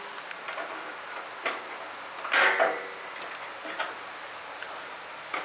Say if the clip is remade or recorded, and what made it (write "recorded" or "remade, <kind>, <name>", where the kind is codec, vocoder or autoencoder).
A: recorded